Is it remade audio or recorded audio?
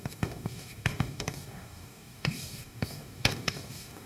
remade